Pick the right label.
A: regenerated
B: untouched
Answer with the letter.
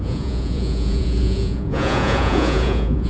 A